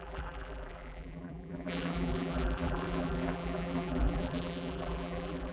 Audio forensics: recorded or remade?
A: remade